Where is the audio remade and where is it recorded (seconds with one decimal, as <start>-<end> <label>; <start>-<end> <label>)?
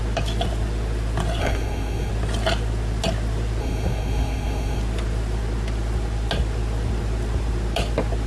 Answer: 0.0-1.4 recorded; 1.4-2.1 remade; 2.1-3.6 recorded; 3.6-4.8 remade; 4.8-8.3 recorded